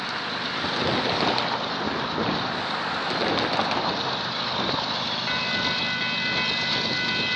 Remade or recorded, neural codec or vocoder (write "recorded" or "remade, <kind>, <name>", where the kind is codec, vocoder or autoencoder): recorded